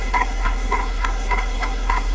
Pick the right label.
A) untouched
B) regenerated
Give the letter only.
B